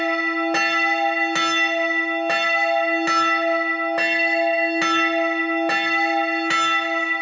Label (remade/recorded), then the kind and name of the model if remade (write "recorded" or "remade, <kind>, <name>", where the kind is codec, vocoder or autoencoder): recorded